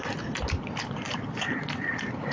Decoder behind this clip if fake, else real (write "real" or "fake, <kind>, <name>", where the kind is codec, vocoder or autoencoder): fake, vocoder, BigVGAN v2